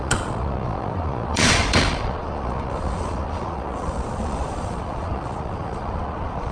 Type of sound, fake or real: fake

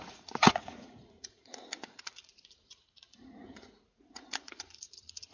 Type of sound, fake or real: fake